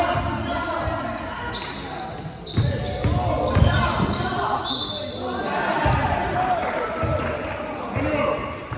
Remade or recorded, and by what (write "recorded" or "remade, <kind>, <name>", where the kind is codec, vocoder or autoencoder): recorded